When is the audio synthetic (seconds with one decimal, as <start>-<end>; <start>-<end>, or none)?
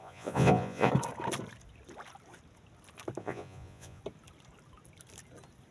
0.0-0.9; 3.2-4.0